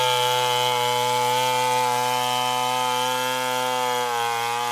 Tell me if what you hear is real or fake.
real